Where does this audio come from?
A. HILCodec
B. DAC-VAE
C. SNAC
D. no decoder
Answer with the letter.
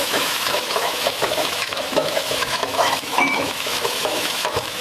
B